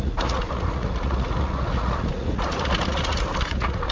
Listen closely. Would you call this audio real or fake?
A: fake